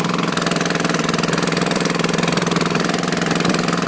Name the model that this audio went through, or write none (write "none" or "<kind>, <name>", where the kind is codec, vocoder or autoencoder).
vocoder, BigVGAN v2